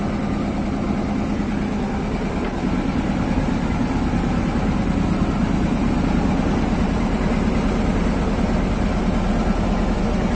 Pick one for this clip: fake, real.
real